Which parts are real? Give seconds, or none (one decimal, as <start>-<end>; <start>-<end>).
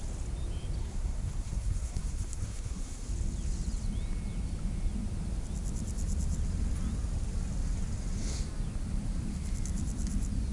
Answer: 0.0-0.8; 3.1-10.5